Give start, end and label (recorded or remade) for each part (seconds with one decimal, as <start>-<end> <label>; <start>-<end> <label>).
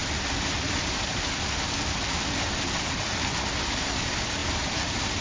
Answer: 0.0-0.6 recorded; 0.6-1.1 remade; 1.1-3.7 recorded; 3.7-5.2 remade